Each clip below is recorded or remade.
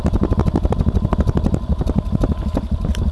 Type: recorded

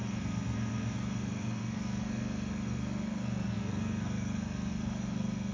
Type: remade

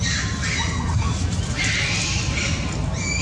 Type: recorded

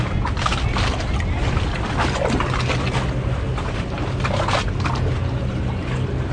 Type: recorded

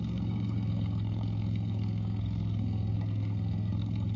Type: remade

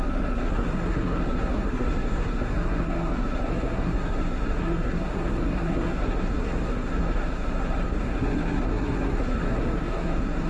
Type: remade